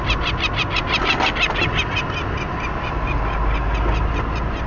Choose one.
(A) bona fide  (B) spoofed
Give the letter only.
A